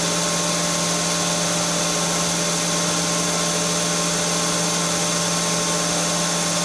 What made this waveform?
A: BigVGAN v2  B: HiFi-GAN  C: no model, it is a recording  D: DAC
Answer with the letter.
C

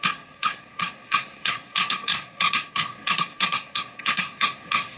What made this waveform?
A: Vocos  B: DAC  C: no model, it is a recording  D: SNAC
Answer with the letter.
D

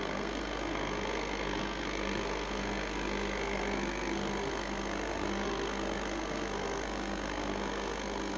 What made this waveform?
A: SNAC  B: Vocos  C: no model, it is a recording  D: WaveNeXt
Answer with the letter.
A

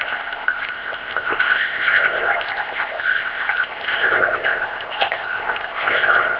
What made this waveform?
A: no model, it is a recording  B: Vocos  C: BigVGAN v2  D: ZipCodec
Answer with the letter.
D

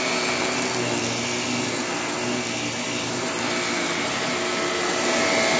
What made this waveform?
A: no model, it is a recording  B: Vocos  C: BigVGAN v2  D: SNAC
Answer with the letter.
A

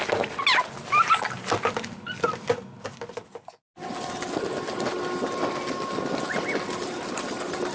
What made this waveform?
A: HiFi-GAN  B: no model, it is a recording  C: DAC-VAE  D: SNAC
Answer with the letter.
B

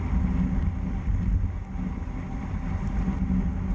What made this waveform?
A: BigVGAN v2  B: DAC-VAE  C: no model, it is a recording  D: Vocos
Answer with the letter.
C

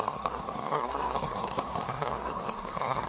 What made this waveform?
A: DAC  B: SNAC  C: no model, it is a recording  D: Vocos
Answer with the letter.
B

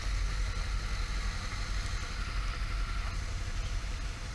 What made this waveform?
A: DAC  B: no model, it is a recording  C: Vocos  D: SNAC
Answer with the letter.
B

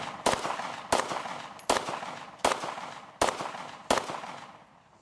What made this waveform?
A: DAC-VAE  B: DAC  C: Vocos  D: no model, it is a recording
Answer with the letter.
D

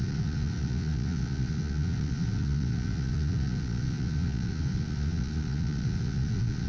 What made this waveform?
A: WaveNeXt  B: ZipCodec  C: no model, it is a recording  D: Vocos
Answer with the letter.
D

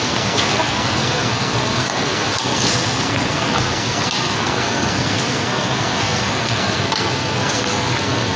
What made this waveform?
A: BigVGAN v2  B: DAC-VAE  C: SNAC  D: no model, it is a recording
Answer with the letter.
C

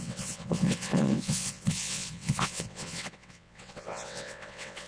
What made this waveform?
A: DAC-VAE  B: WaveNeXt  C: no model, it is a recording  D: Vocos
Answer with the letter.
B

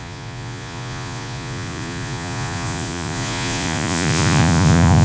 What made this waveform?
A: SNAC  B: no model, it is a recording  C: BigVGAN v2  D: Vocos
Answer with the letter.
D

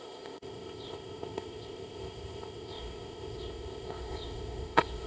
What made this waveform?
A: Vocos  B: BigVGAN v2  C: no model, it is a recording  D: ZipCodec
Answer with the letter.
D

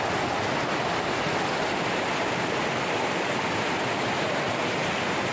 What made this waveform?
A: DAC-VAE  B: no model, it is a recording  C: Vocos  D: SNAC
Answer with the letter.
B